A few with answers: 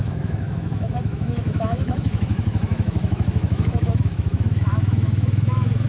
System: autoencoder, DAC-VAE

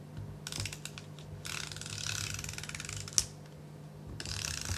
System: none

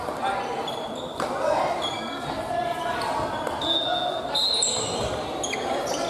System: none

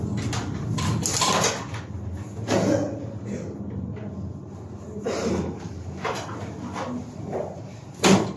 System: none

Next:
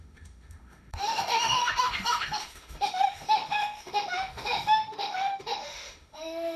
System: autoencoder, DAC-VAE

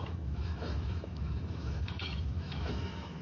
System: autoencoder, DAC-VAE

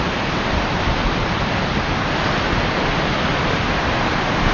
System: none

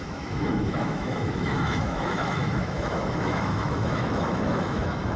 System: autoencoder, DAC-VAE